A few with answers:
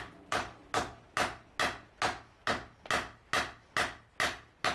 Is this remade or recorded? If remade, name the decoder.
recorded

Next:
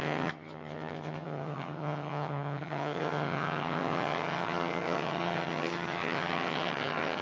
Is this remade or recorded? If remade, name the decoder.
remade, vocoder, HiFi-GAN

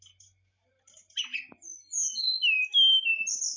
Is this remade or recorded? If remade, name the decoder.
recorded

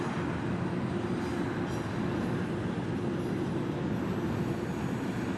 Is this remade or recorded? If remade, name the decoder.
recorded